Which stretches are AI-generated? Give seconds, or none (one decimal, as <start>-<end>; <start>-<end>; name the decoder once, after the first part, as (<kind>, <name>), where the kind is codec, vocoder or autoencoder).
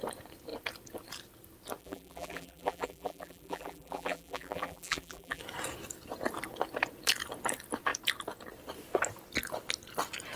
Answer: 1.8-5.4 (vocoder, BigVGAN v2)